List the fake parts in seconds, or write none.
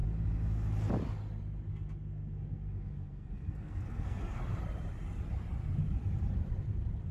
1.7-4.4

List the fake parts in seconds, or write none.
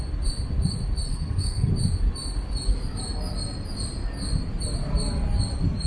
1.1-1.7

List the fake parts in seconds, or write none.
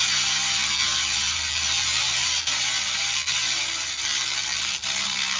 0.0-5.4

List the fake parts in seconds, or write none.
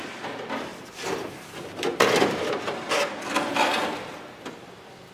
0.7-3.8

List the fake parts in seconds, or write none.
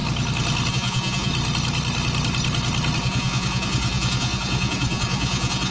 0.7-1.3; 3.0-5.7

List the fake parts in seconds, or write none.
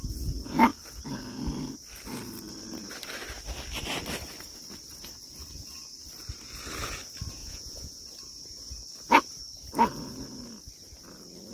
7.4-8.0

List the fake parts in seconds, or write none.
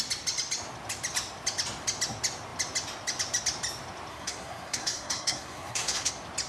4.1-6.1